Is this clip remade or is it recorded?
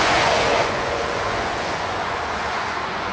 remade